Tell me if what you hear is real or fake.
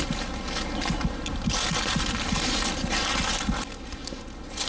real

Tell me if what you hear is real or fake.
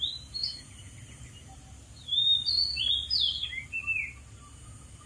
real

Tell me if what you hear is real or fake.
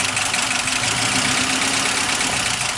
real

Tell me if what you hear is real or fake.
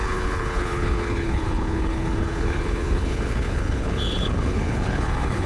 fake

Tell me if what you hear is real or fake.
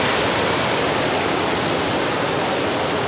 real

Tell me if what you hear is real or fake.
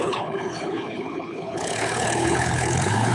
fake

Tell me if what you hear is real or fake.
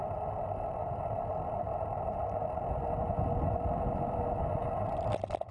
real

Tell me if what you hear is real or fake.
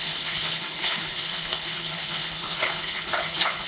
fake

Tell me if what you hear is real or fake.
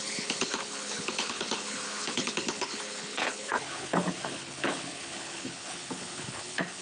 fake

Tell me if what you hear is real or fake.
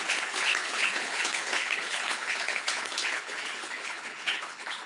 fake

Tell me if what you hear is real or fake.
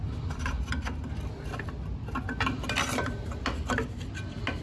real